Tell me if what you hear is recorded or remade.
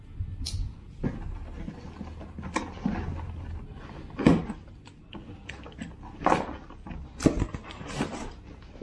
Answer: recorded